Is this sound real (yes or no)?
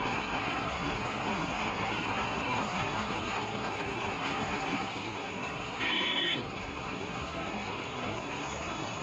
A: no